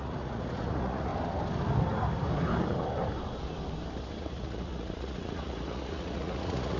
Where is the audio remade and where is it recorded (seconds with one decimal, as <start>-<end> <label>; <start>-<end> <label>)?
0.0-1.1 remade; 1.1-4.2 recorded; 4.2-6.8 remade